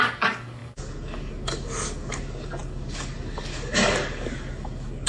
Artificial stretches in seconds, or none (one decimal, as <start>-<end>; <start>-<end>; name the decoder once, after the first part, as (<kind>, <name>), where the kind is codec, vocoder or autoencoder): 0.0-5.1 (codec, DAC)